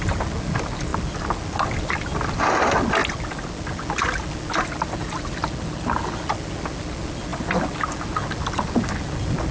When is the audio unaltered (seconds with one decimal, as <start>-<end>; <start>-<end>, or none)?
0.0-9.5